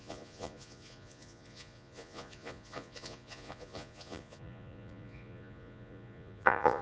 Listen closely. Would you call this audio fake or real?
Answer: fake